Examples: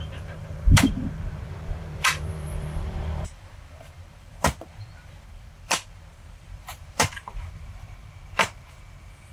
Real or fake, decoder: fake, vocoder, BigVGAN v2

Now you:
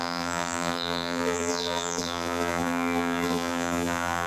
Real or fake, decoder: fake, vocoder, BigVGAN v2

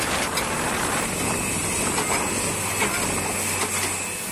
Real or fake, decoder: real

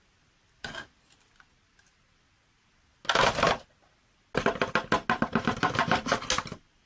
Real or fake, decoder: real